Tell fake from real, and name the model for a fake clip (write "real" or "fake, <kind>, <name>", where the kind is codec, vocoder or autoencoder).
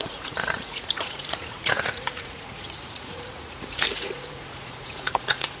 fake, vocoder, Vocos